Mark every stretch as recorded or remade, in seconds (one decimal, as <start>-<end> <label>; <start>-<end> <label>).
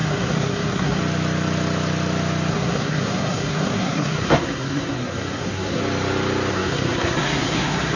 0.0-1.0 remade; 1.0-2.5 recorded; 2.5-5.8 remade; 5.8-6.5 recorded; 6.5-8.0 remade